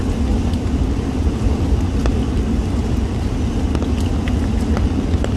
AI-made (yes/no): no